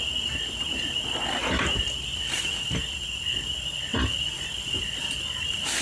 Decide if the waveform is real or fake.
real